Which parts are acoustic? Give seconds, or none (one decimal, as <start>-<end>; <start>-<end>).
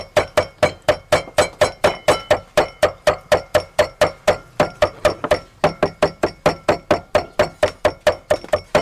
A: 0.0-8.8